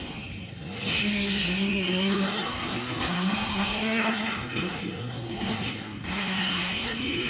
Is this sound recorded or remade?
remade